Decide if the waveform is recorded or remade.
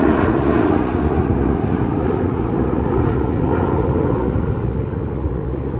remade